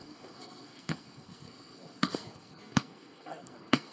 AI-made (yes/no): yes